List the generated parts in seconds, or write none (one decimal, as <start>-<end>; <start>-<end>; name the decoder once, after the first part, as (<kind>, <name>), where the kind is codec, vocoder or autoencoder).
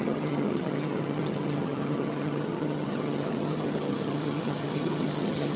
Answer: 0.0-5.6 (vocoder, HiFi-GAN)